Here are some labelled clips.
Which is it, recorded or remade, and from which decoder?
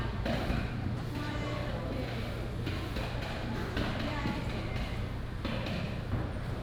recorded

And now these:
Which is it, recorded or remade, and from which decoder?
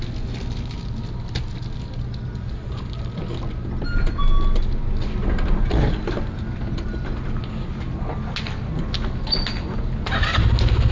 recorded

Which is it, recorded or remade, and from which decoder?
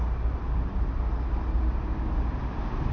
recorded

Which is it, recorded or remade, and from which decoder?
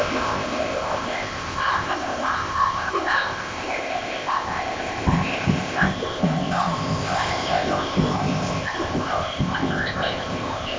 remade, codec, ZipCodec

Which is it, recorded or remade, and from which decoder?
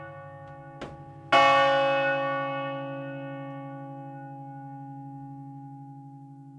recorded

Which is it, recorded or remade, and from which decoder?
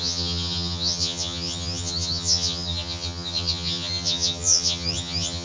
remade, vocoder, HiFi-GAN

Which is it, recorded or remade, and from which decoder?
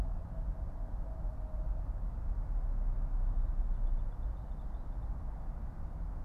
recorded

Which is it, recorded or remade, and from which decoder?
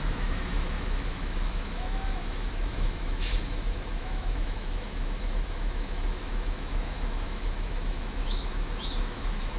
remade, autoencoder, DAC-VAE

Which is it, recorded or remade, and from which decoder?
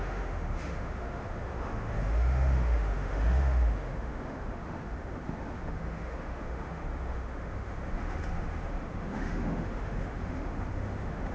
remade, autoencoder, DAC-VAE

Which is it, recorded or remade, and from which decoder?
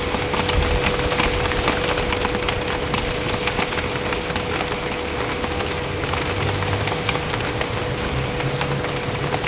recorded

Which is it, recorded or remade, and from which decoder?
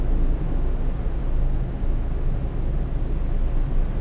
recorded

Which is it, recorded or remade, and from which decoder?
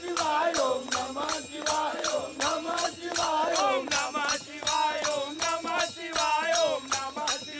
recorded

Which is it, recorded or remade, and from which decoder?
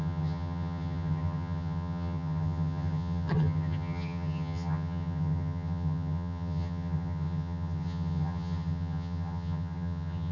remade, vocoder, HiFi-GAN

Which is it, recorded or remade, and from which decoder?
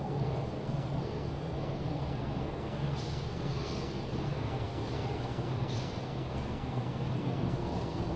remade, codec, SNAC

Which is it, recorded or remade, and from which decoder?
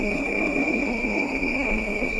remade, codec, SNAC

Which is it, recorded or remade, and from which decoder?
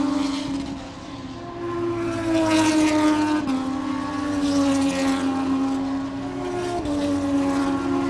recorded